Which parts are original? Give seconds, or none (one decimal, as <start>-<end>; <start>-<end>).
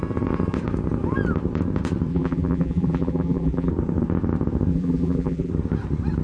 0.0-2.1; 3.7-4.7; 5.5-6.2